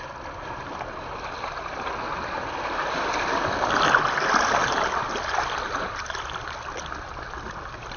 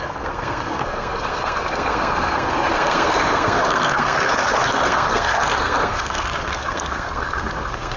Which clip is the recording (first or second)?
first